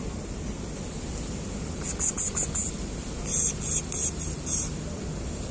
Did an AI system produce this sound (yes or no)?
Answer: no